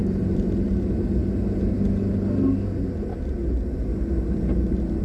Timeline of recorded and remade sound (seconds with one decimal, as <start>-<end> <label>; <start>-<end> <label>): 0.0-0.7 remade; 0.7-5.0 recorded